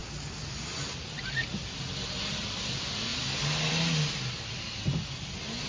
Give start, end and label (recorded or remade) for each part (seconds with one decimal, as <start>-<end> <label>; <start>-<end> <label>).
0.0-5.7 recorded